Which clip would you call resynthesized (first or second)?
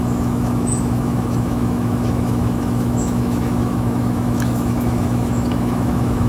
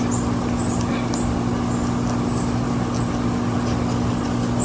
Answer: first